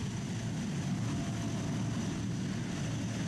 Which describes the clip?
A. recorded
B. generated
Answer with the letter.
A